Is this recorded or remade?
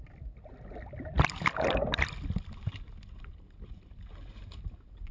recorded